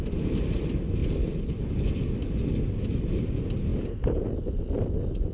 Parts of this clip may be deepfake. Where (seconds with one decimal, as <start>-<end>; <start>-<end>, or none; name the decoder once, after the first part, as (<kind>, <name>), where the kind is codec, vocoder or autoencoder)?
3.7-4.2 (vocoder, BigVGAN v2)